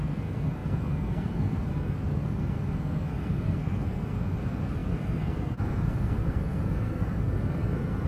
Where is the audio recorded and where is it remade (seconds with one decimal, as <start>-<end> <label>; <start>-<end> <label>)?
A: 0.0-8.1 remade